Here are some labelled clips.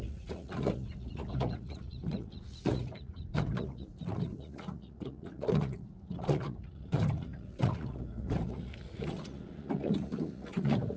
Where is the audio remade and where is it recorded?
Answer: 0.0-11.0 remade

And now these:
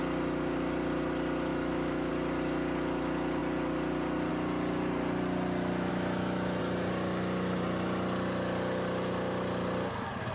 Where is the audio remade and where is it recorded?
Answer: 0.0-1.5 recorded; 1.5-2.1 remade; 2.1-5.9 recorded; 5.9-6.6 remade; 6.6-10.3 recorded

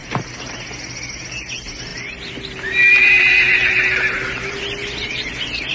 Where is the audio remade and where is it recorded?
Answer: 0.0-5.7 recorded

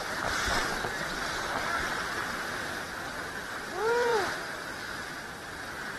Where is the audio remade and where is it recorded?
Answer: 0.0-0.6 remade; 0.6-3.4 recorded; 3.4-6.0 remade

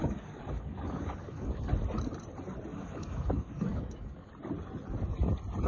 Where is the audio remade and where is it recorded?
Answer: 0.0-1.7 remade; 1.7-2.7 recorded; 2.7-4.3 remade; 4.3-5.7 recorded

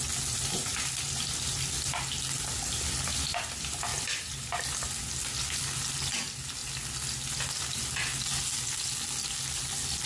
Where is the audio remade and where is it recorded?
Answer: 0.0-10.1 recorded

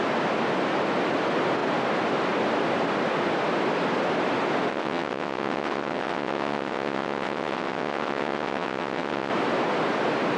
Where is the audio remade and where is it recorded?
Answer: 0.0-4.7 recorded; 4.7-9.3 remade; 9.3-10.4 recorded